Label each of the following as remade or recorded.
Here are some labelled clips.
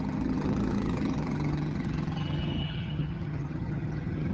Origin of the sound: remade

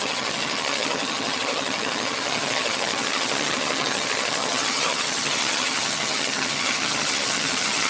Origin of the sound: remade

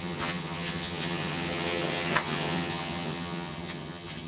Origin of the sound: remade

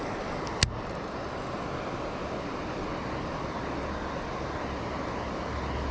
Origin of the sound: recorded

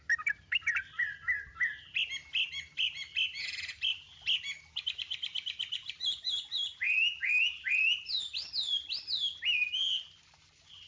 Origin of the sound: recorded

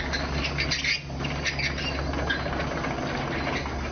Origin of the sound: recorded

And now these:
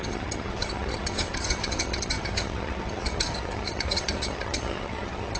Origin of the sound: remade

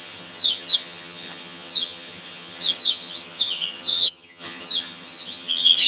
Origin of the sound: remade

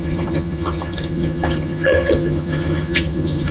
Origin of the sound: remade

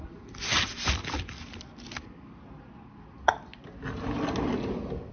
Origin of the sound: recorded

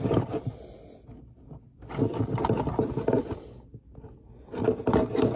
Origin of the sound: recorded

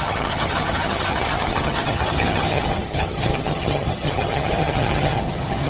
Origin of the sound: remade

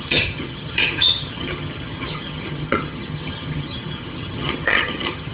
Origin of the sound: remade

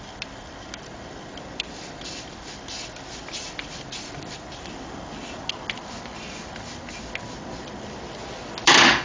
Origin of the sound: recorded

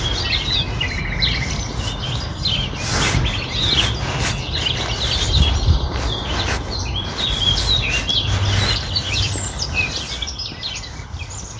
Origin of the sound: recorded